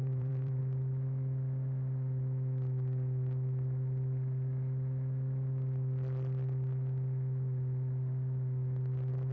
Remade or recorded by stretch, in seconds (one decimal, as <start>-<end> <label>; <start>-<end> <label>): 0.0-0.6 remade; 0.6-9.3 recorded